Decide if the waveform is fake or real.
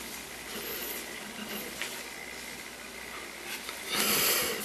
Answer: real